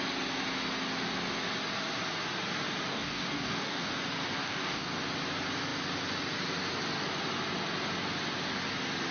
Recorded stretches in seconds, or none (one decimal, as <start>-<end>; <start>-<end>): 0.0-2.9; 3.9-4.4; 4.9-9.1